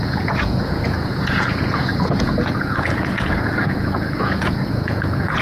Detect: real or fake fake